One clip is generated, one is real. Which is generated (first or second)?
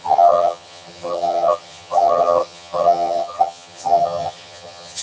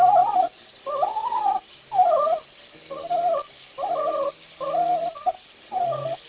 first